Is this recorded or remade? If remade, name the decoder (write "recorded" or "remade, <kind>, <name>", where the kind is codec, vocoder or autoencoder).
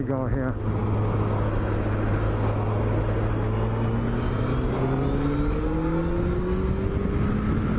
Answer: recorded